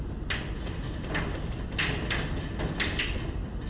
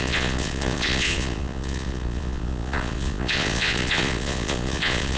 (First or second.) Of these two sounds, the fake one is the second